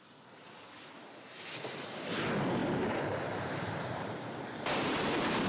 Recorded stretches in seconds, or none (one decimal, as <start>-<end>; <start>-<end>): 0.0-2.6